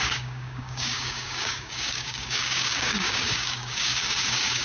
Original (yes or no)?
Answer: no